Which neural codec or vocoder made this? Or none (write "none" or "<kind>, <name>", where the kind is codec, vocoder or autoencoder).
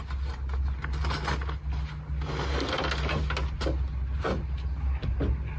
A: none